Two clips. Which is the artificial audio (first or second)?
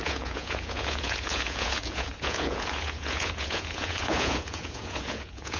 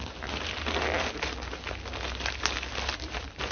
first